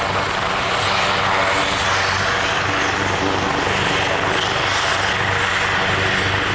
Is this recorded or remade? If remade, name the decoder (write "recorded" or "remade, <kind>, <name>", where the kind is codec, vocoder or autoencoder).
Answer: recorded